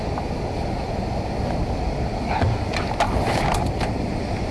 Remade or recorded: recorded